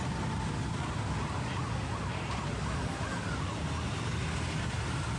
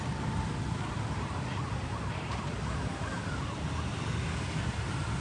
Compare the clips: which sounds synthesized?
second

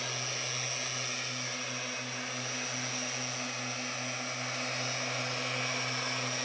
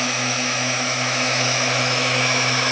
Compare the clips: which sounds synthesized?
second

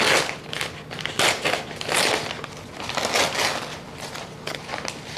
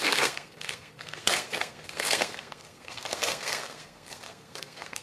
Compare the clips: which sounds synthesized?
second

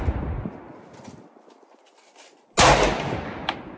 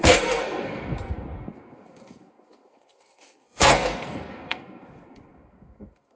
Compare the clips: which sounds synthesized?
second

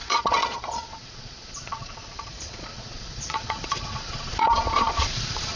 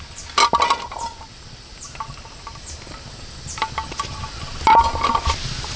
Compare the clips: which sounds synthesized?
first